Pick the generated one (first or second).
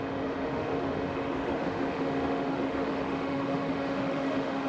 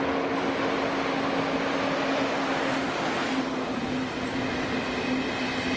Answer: first